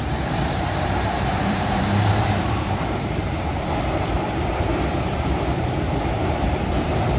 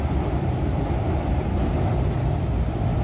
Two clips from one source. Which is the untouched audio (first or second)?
second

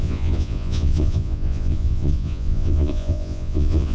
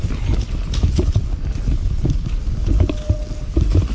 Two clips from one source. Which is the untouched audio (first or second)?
second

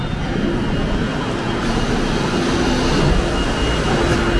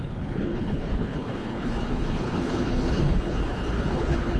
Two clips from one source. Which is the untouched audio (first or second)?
first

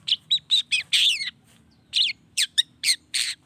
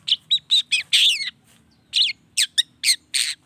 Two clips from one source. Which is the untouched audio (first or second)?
second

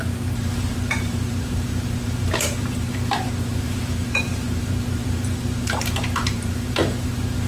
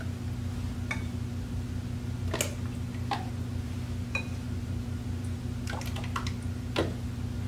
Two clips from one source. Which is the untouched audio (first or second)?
second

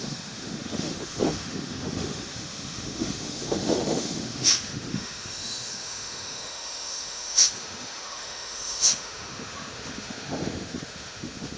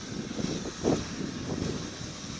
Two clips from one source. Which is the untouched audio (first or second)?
second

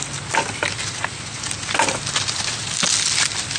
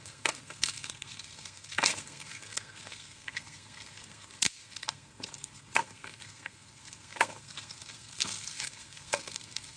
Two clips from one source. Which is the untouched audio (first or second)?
first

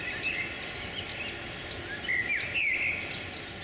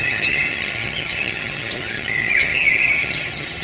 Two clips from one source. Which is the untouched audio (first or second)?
first